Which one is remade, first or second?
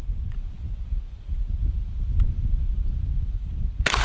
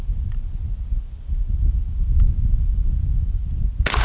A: first